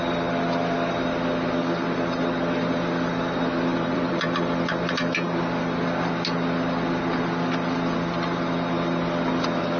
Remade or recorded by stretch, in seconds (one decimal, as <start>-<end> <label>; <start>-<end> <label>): 0.0-3.7 recorded; 3.7-4.4 remade; 4.4-9.8 recorded